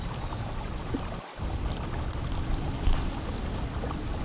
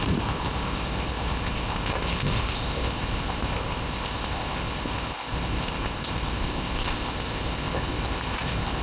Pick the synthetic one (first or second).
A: second